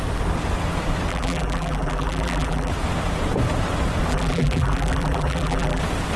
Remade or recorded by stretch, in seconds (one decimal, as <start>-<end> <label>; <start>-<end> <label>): 0.0-1.1 recorded; 1.1-2.7 remade; 2.7-4.1 recorded; 4.1-5.8 remade; 5.8-6.2 recorded